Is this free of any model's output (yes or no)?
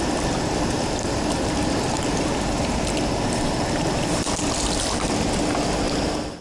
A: yes